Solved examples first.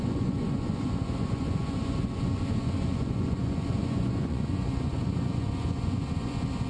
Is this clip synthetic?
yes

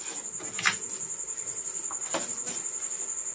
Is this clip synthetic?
no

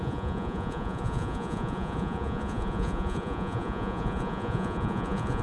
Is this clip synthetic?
yes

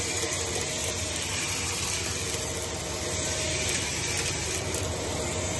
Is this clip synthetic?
no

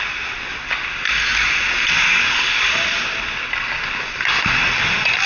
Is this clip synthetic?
no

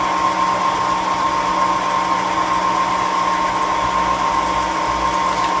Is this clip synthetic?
no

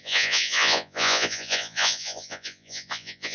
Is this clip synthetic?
yes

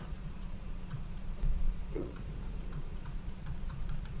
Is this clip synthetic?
yes